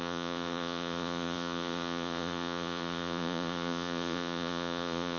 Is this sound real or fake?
fake